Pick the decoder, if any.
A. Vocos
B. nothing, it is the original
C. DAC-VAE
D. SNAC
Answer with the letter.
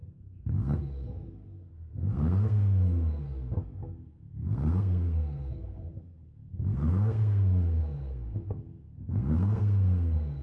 D